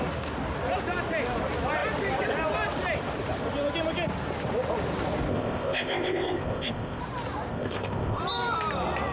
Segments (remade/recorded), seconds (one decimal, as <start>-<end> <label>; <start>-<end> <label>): 0.0-5.3 recorded; 5.3-7.0 remade; 7.0-7.5 recorded; 7.5-8.2 remade; 8.2-9.1 recorded